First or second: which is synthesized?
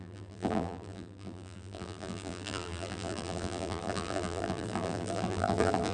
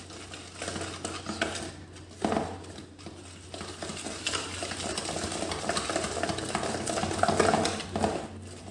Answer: first